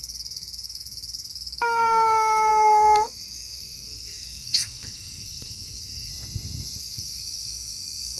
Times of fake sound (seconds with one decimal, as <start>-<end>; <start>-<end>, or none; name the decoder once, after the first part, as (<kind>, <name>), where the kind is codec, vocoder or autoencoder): 0.0-6.1 (codec, SNAC); 6.8-8.2